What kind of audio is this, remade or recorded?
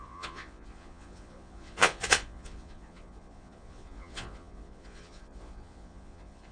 remade